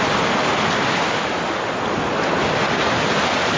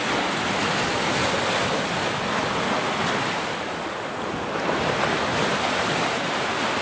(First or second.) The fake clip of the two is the second